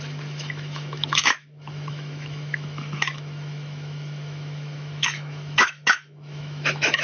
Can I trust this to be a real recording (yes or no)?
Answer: no